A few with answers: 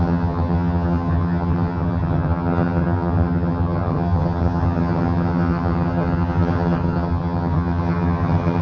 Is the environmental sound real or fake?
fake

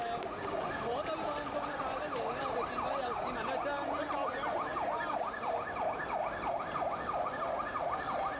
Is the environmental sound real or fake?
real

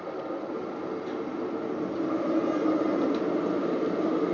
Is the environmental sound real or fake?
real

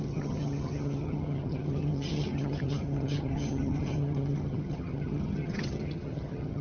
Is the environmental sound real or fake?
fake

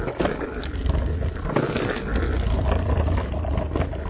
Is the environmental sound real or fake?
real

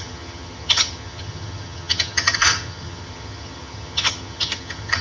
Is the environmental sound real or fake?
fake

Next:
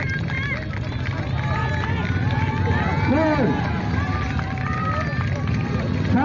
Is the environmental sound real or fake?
real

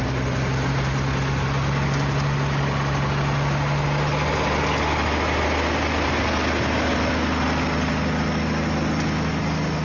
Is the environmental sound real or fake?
real